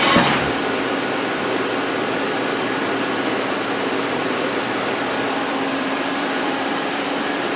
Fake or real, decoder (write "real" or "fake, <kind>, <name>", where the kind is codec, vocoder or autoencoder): fake, vocoder, BigVGAN v2